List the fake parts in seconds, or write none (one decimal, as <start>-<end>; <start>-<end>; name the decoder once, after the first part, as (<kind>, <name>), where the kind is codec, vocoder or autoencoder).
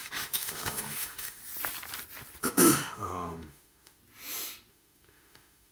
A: 0.0-1.4 (autoencoder, DAC-VAE); 2.4-4.0; 4.7-5.7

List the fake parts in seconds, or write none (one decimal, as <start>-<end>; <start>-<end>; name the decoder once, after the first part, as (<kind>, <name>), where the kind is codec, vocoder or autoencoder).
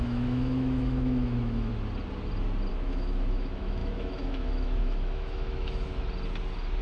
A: 0.0-1.7 (autoencoder, DAC-VAE); 2.7-5.9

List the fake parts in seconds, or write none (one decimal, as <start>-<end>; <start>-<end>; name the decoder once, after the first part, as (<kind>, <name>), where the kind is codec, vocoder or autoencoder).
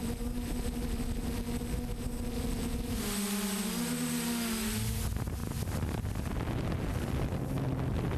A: none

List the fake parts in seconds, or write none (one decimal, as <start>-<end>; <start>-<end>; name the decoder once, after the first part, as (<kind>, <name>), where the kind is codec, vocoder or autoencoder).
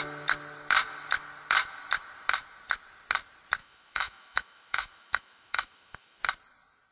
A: 3.6-6.2 (autoencoder, DAC-VAE)